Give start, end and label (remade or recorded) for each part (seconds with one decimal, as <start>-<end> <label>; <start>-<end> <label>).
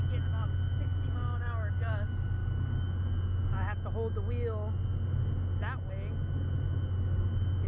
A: 0.0-7.7 recorded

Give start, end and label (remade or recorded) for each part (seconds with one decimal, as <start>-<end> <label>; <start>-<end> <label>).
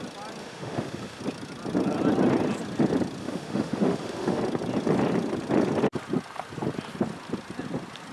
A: 0.0-0.4 recorded; 0.4-1.2 remade; 1.2-3.2 recorded; 3.2-4.4 remade; 4.4-8.1 recorded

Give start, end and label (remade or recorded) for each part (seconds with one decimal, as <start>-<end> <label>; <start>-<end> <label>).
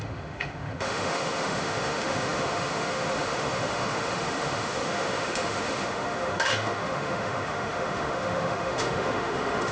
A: 0.0-9.7 remade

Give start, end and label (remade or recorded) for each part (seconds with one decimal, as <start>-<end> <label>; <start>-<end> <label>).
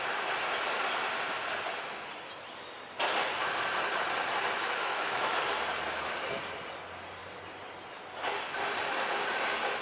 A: 0.0-4.6 recorded; 4.6-5.4 remade; 5.4-9.8 recorded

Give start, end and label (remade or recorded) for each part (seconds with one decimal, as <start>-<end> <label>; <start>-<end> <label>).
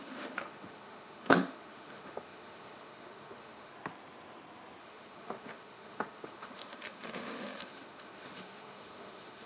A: 0.0-3.7 remade; 3.7-4.8 recorded; 4.8-9.5 remade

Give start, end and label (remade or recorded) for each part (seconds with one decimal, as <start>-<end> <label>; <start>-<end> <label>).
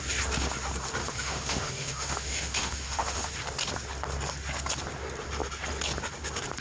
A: 0.0-1.0 recorded; 1.0-3.3 remade; 3.3-6.6 recorded